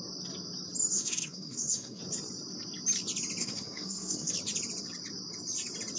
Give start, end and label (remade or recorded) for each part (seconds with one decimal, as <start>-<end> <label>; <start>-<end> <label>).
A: 0.0-0.9 recorded; 0.9-2.0 remade; 2.0-3.4 recorded; 3.4-4.3 remade; 4.3-6.0 recorded